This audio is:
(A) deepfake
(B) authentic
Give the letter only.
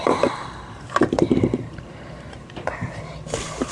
B